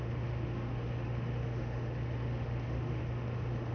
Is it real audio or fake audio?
fake